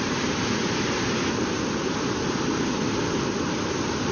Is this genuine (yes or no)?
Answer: no